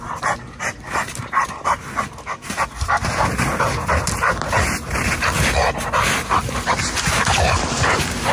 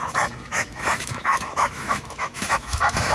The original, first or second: first